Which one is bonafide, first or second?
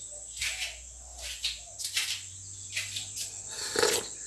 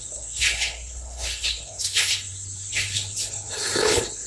first